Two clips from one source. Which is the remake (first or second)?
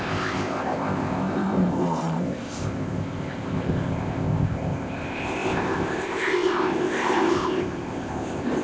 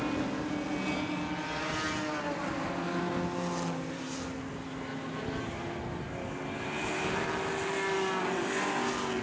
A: first